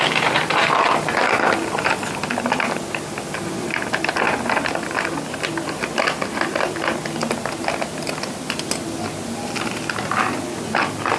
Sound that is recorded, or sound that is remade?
recorded